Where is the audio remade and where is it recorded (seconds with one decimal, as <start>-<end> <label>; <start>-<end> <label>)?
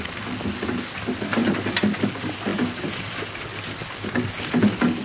0.0-2.5 recorded; 2.5-4.3 remade; 4.3-5.0 recorded